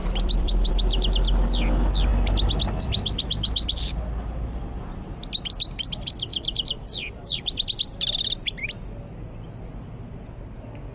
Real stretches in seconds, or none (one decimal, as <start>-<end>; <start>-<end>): 0.7-6.3; 8.7-10.9